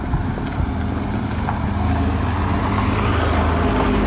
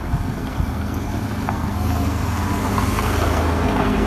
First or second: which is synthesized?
second